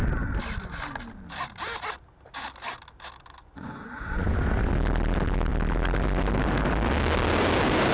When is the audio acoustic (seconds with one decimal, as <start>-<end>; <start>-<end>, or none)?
0.0-3.4; 4.7-7.9